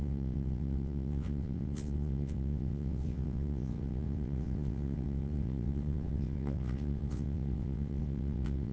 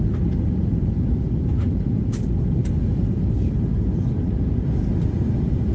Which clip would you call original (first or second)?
second